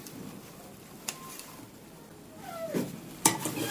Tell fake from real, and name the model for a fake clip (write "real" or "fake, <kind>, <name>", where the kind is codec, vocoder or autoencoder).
fake, vocoder, BigVGAN v2